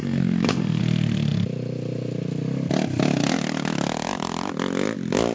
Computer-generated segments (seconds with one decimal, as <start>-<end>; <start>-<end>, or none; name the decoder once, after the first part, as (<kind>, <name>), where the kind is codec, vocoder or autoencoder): 0.0-0.8 (codec, SNAC)